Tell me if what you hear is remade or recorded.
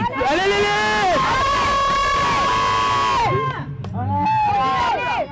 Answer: recorded